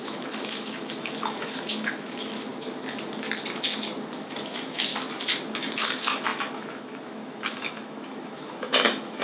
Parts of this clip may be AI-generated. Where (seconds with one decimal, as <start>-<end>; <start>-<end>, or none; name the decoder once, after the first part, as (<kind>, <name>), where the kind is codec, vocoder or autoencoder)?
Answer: 0.0-2.5 (autoencoder, DAC-VAE); 4.2-4.9; 5.6-9.2